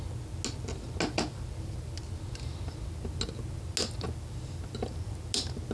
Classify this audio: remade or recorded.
recorded